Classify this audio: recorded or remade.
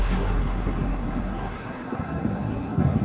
remade